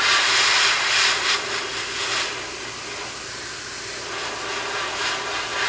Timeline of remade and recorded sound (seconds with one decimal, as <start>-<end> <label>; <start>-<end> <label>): 0.0-5.7 recorded